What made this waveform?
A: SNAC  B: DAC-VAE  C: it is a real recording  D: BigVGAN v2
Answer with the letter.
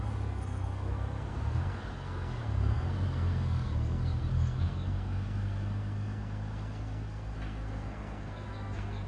A